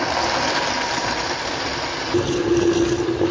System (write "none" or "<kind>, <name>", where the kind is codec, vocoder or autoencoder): none